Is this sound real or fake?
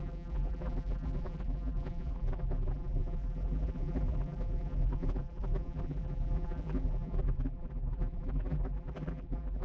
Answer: fake